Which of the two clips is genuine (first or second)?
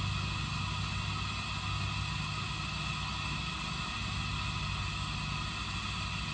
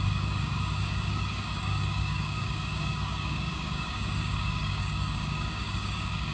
first